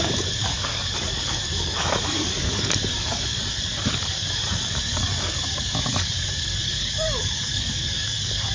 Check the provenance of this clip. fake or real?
fake